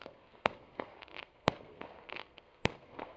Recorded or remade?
remade